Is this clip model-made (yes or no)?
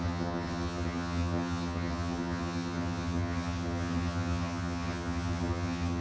yes